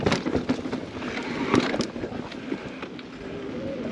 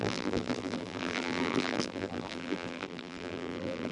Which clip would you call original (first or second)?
first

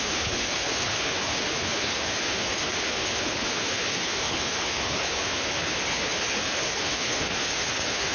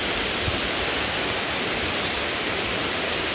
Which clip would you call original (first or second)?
second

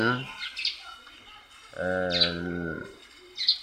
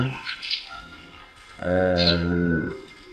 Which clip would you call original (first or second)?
first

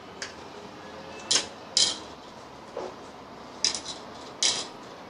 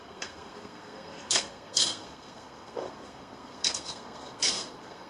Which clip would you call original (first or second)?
first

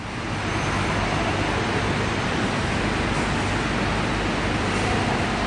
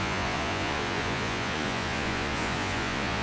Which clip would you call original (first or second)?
first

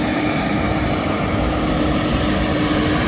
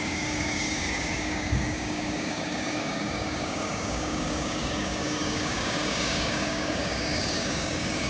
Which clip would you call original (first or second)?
first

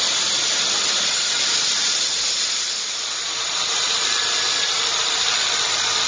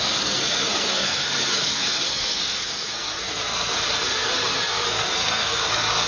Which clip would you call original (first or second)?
first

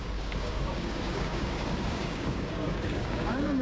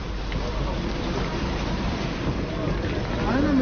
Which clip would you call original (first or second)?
second